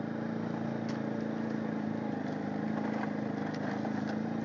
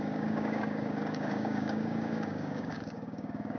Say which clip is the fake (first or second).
second